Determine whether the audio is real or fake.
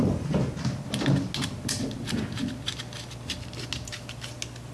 real